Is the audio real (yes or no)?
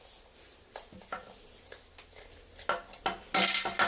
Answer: yes